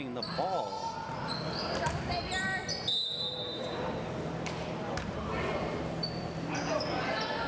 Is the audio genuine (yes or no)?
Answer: yes